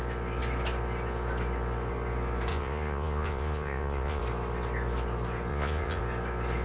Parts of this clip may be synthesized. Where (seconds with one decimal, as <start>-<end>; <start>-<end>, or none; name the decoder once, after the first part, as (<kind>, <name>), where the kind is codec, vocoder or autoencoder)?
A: 2.5-4.2 (vocoder, Vocos); 5.5-6.0